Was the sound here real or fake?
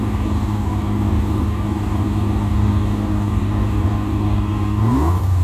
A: fake